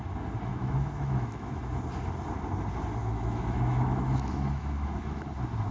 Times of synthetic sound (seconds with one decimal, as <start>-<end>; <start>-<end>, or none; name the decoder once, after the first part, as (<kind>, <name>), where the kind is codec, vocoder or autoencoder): 0.5-1.6 (autoencoder, DAC-VAE); 3.0-5.3

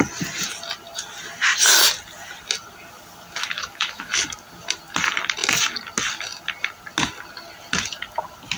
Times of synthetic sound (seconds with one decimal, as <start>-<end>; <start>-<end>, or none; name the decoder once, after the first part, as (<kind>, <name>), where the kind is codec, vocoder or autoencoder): 3.4-4.1 (autoencoder, DAC-VAE)

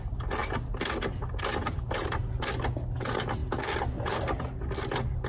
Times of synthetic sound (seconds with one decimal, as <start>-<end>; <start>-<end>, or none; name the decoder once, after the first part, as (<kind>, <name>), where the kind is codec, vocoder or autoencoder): none

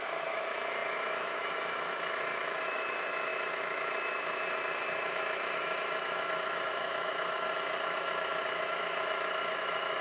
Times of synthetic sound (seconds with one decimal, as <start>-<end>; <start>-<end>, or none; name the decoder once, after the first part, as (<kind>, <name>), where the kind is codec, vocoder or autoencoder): 0.0-10.0 (autoencoder, DAC-VAE)